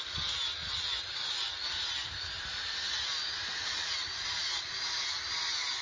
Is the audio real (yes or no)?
yes